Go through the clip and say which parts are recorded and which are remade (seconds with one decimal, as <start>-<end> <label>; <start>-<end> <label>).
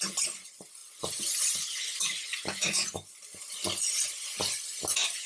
0.0-0.8 recorded; 0.8-1.5 remade; 1.5-5.3 recorded